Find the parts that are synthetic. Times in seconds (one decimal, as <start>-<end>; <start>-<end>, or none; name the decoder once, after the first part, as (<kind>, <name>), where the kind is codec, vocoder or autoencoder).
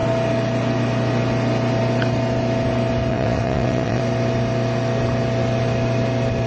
3.1-4.0 (vocoder, WaveNeXt)